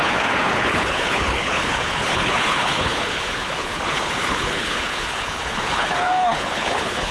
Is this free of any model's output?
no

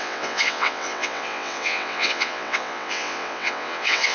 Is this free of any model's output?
no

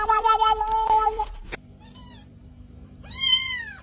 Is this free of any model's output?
no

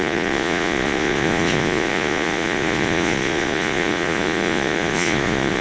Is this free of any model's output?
no